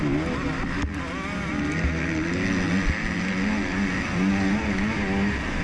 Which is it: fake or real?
real